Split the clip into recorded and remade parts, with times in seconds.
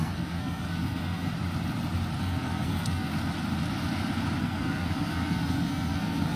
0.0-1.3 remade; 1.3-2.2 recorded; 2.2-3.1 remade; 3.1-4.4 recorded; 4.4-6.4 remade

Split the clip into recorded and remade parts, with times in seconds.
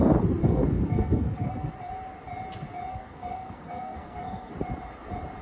0.0-0.4 recorded; 0.4-1.7 remade; 1.7-2.9 recorded; 2.9-4.5 remade; 4.5-5.4 recorded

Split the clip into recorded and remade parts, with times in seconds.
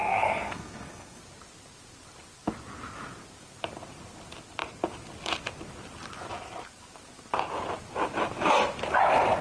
0.0-1.2 remade; 1.2-9.4 recorded